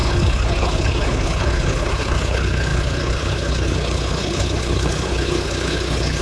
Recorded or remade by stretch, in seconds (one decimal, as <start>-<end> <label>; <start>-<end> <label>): 0.0-6.2 remade